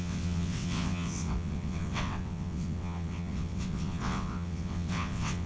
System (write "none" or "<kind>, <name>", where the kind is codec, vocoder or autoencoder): vocoder, WaveNeXt